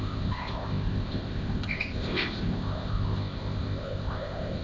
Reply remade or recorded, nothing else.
remade